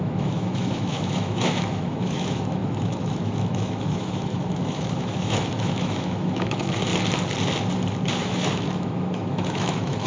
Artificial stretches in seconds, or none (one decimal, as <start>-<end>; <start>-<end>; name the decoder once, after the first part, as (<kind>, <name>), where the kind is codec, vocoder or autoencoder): 0.0-6.9 (autoencoder, DAC-VAE); 8.2-10.1